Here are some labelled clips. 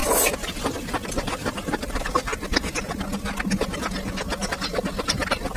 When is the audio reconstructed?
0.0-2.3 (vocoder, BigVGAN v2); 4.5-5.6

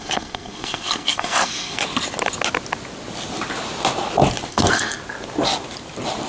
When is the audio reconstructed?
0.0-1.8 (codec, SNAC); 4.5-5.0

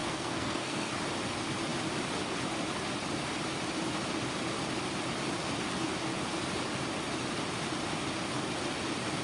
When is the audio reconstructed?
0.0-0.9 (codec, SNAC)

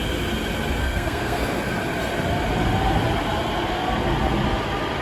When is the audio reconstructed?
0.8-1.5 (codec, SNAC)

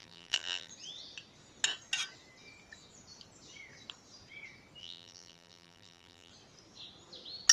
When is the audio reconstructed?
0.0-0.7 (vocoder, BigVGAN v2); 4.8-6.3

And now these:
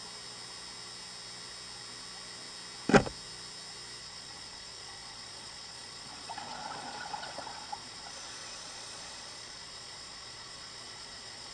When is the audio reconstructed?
4.0-11.5 (vocoder, Vocos)